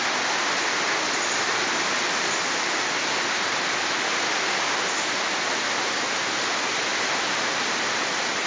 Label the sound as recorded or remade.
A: recorded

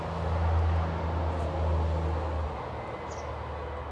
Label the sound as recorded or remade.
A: recorded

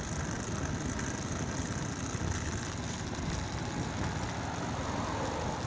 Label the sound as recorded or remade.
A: recorded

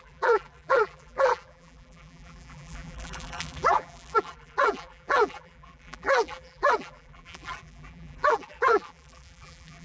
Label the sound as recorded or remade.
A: remade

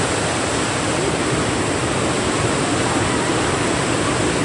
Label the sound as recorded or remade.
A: recorded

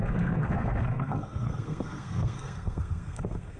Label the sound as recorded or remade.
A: remade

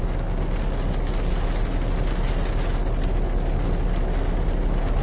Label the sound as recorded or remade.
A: recorded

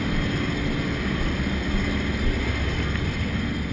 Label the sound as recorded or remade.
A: recorded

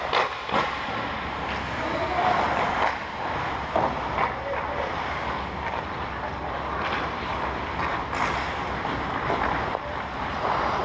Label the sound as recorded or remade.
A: recorded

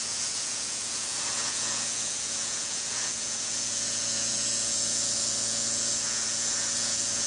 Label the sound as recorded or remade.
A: remade